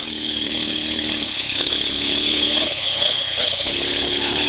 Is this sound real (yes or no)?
no